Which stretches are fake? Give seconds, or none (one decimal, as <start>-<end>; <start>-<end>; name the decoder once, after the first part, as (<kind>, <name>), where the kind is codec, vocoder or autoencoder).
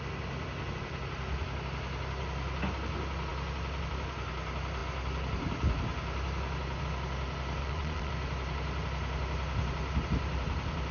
7.6-8.1 (vocoder, Vocos)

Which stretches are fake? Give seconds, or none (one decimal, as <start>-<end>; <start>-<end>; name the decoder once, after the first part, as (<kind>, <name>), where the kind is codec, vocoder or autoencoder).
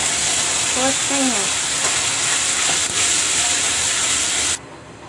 none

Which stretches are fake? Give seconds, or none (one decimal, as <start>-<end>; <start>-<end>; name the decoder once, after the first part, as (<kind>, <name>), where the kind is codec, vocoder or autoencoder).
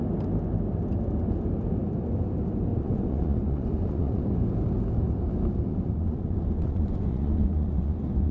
2.7-4.2 (vocoder, Vocos); 5.7-8.3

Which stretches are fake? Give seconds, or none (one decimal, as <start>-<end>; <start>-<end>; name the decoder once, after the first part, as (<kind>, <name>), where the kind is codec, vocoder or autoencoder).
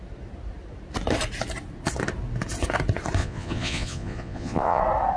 3.2-4.8 (vocoder, Vocos)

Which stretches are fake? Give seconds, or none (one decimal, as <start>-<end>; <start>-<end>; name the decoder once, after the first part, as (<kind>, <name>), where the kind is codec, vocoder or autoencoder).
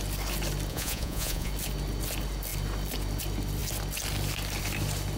0.7-1.5 (vocoder, Vocos)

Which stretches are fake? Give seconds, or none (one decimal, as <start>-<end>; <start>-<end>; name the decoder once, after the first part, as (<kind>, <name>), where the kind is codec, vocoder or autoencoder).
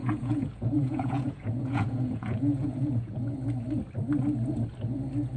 0.0-3.2 (vocoder, Vocos)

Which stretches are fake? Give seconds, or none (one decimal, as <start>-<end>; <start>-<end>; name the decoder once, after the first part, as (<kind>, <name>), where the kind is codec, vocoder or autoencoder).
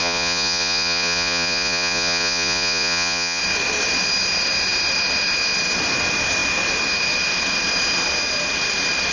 0.0-3.4 (vocoder, Vocos)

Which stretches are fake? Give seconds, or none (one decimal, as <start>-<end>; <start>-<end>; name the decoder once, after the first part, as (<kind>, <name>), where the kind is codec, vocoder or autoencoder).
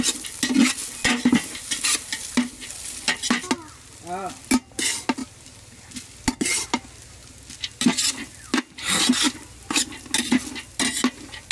none